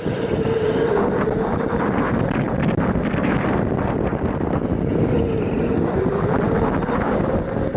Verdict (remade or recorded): recorded